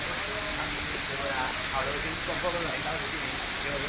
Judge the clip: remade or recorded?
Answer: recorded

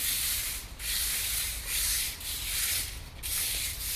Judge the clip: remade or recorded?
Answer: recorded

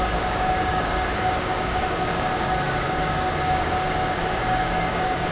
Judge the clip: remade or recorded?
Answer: remade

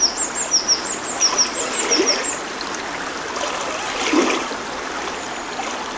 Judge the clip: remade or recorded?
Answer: recorded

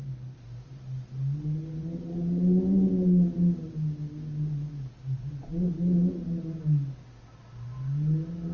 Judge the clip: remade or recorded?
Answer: recorded